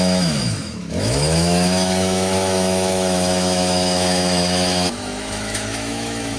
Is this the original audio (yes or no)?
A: no